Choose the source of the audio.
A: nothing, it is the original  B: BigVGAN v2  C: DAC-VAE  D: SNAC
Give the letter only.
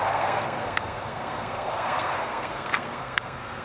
D